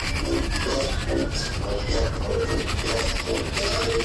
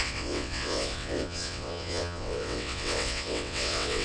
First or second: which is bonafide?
first